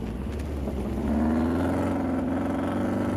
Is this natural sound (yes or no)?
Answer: yes